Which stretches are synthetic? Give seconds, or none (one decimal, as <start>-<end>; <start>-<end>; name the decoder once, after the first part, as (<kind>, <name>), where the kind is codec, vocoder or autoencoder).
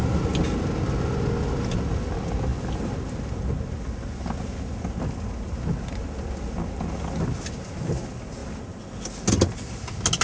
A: none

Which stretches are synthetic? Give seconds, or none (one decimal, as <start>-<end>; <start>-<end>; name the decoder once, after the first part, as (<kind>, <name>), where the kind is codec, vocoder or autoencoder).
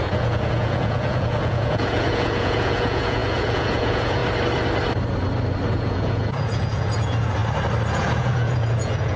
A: 0.0-4.2 (vocoder, Vocos); 5.7-7.4; 7.9-9.2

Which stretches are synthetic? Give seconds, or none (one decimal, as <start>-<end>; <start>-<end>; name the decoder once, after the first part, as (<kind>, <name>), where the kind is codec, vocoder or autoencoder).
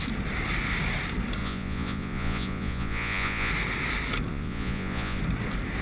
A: 1.4-3.5 (vocoder, Vocos); 4.3-5.2